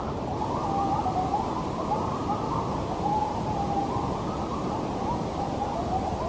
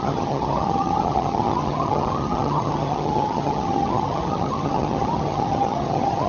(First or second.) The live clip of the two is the first